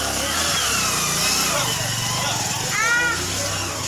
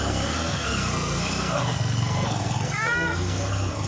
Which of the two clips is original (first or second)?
first